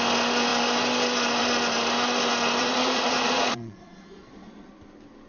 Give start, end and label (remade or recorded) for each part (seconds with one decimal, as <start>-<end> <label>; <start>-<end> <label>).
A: 0.0-2.6 recorded; 2.6-4.7 remade; 4.7-5.3 recorded